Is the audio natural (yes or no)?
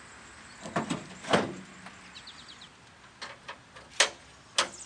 yes